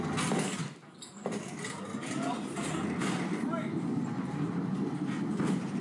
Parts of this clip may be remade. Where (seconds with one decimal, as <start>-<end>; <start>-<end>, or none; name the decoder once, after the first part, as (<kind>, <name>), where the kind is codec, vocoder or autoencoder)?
none